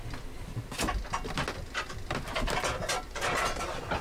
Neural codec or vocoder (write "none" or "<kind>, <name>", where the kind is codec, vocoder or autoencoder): none